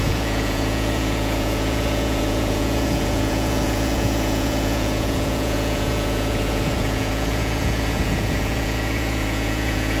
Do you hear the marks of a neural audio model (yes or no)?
yes